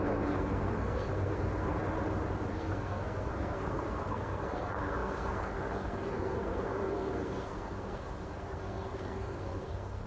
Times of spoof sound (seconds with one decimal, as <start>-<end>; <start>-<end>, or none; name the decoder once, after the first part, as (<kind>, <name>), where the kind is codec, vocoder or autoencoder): 0.0-1.8 (codec, SNAC); 2.5-10.1